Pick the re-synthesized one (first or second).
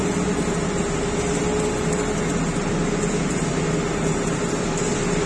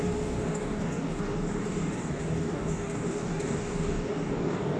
second